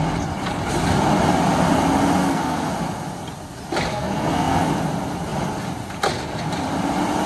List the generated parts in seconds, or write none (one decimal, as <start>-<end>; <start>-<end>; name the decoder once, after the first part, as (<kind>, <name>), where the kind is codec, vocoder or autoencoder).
2.2-2.7 (codec, SNAC); 3.9-4.7